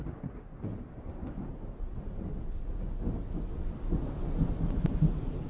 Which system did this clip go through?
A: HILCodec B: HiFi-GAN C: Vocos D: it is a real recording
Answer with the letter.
D